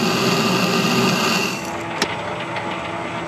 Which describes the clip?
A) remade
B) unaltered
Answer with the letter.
B